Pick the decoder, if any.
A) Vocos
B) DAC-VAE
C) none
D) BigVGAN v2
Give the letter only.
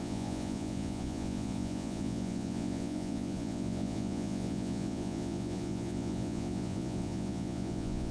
A